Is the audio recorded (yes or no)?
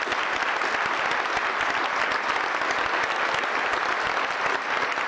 yes